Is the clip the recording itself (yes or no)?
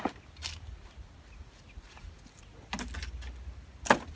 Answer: yes